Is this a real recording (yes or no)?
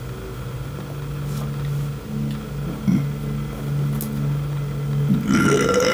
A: yes